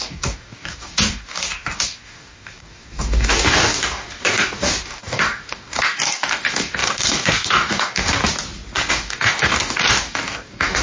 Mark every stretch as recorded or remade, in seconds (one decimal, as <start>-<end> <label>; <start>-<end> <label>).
0.0-8.2 remade; 8.2-8.9 recorded; 8.9-10.8 remade